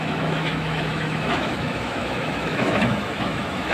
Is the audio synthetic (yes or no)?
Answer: yes